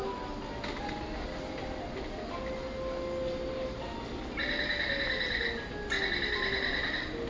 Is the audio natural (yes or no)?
yes